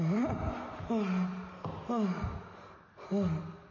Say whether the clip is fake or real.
real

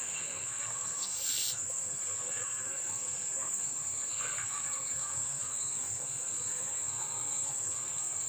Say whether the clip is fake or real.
fake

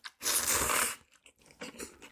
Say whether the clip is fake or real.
real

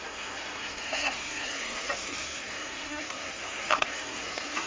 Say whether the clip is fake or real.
fake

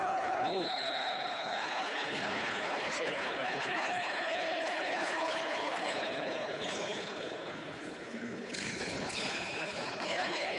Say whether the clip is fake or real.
fake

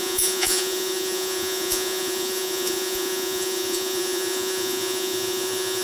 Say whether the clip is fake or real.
fake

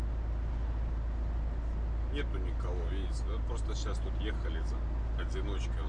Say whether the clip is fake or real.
real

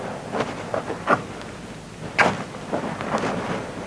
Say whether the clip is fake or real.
real